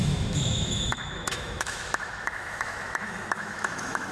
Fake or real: fake